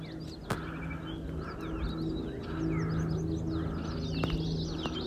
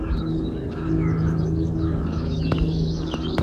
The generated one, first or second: second